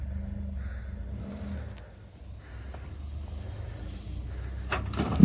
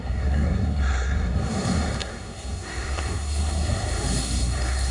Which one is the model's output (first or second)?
second